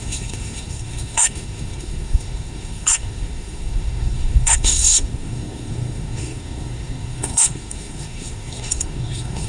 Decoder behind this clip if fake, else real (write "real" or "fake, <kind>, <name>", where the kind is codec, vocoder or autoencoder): fake, codec, SNAC